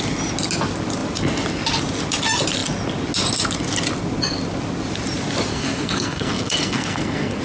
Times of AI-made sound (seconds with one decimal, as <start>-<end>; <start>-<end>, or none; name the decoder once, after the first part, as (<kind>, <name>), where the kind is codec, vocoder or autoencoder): 5.5-7.4 (codec, SNAC)